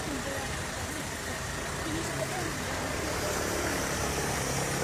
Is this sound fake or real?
fake